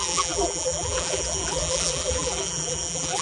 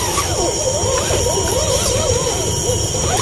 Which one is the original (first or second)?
second